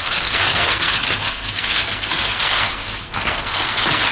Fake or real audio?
fake